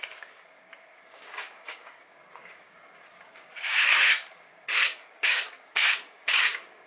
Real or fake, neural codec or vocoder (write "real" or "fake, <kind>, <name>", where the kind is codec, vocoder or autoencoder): fake, codec, DAC